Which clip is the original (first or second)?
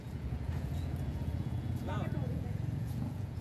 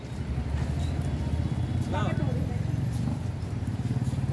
second